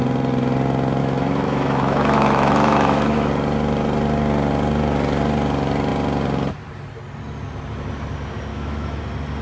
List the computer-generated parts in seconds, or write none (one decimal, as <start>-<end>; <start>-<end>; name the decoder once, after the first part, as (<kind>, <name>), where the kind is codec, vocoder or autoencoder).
1.0-3.3 (autoencoder, DAC-VAE); 8.5-9.0